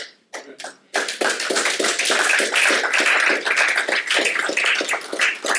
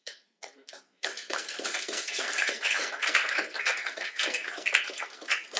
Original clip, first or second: first